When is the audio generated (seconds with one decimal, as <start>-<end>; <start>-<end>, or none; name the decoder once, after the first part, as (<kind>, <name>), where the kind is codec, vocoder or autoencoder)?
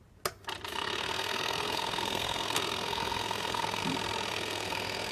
0.7-3.8 (codec, SNAC); 4.3-5.1